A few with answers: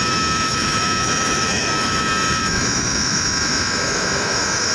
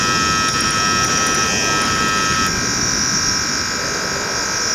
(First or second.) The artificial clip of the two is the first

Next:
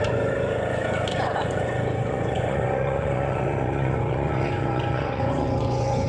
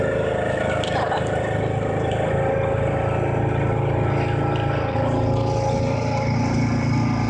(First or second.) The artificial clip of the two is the first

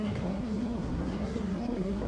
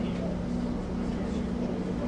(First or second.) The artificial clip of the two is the first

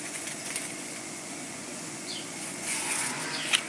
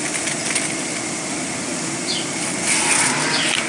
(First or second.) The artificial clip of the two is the first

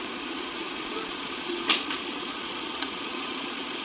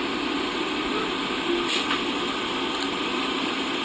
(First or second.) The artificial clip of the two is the first